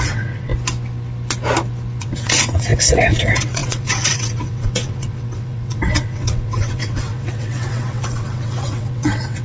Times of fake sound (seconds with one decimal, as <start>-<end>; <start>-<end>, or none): 0.0-0.5; 2.0-9.4